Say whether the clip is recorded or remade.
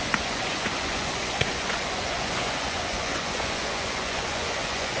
remade